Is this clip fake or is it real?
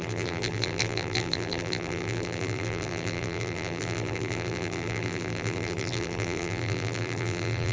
fake